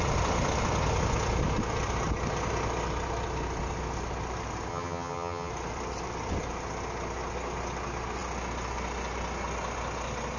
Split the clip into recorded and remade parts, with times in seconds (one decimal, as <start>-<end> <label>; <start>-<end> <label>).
0.0-4.7 recorded; 4.7-5.5 remade; 5.5-10.4 recorded